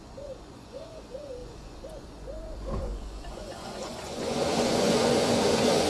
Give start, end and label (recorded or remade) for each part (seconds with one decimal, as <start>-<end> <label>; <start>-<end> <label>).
0.0-5.9 remade